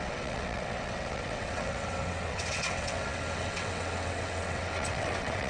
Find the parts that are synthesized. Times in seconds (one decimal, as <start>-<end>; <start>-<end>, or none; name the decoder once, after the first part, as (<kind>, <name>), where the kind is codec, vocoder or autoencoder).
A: 0.0-5.5 (vocoder, WaveNeXt)